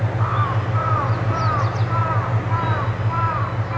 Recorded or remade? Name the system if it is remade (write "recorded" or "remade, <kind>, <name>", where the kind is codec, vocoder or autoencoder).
recorded